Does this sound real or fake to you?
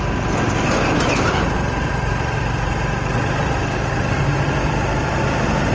real